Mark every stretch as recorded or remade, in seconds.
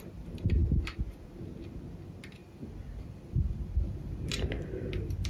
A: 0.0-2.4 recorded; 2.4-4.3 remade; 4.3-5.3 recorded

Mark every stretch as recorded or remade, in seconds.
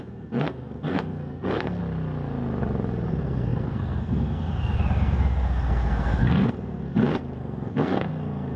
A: 0.0-1.8 remade; 1.8-3.1 recorded; 3.1-8.6 remade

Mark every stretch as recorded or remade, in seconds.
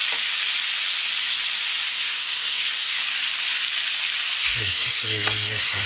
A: 0.0-1.9 recorded; 1.9-3.0 remade; 3.0-4.4 recorded; 4.4-5.9 remade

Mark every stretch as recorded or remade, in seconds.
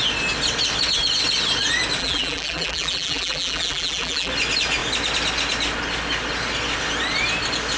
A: 0.0-2.0 recorded; 2.0-4.3 remade; 4.3-7.8 recorded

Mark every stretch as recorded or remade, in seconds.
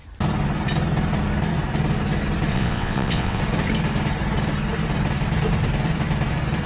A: 0.0-2.5 recorded; 2.5-3.4 remade; 3.4-6.7 recorded